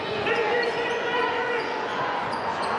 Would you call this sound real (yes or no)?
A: no